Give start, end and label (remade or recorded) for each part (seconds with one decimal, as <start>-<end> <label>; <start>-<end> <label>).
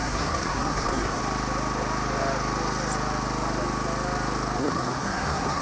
0.0-1.2 remade; 1.2-4.6 recorded; 4.6-5.6 remade